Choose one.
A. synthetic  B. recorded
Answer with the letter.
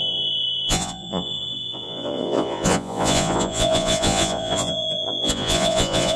A